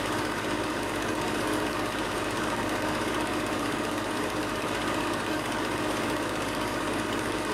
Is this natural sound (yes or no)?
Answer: no